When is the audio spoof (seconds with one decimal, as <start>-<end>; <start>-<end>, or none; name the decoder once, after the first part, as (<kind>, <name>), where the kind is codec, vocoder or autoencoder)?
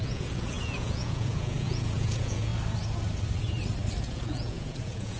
0.0-2.5 (vocoder, Vocos); 4.0-5.2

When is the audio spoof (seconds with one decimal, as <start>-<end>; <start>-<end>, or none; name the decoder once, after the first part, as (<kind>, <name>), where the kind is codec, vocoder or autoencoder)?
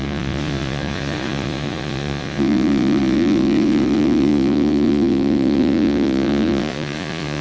0.0-7.4 (vocoder, Vocos)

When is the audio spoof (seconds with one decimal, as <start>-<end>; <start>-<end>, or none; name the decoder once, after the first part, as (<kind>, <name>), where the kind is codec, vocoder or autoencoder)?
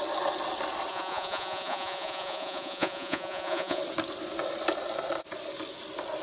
0.9-3.8 (vocoder, Vocos)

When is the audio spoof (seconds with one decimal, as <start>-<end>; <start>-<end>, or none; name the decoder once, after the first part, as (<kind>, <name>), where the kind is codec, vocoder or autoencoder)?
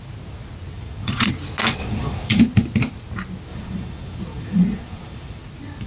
0.7-1.3 (vocoder, Vocos); 1.8-2.4; 3.5-5.4